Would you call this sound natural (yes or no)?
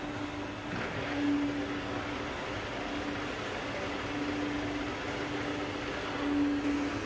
yes